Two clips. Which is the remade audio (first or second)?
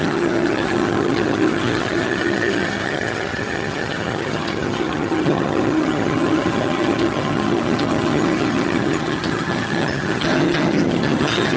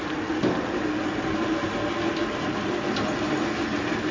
first